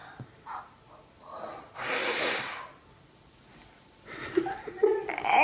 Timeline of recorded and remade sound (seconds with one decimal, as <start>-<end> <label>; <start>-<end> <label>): 0.0-5.4 recorded

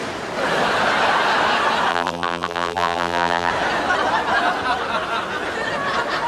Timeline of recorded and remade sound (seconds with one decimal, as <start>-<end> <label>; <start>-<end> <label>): 0.0-1.9 recorded; 1.9-3.5 remade; 3.5-6.3 recorded

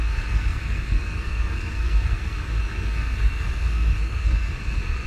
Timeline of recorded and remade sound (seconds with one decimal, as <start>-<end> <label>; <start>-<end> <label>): 0.0-5.1 remade

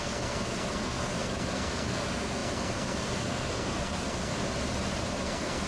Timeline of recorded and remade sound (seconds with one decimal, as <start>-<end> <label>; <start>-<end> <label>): 0.0-4.3 remade; 4.3-5.2 recorded; 5.2-5.7 remade

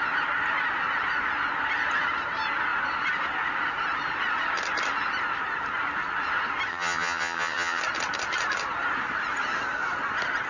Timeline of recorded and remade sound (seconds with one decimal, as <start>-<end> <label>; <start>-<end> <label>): 0.0-6.7 recorded; 6.7-7.8 remade; 7.8-10.5 recorded

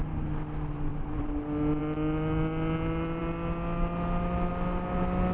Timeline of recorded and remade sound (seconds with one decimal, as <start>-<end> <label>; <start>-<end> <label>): 0.0-5.3 recorded

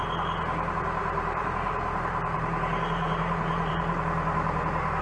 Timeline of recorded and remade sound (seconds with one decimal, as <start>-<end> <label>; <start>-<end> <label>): 0.0-1.0 recorded; 1.0-4.0 remade; 4.0-5.0 recorded

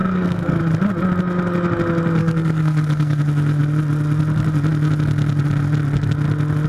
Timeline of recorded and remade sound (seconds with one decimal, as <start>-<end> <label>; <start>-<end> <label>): 0.0-0.6 remade; 0.6-2.2 recorded; 2.2-3.2 remade; 3.2-6.7 recorded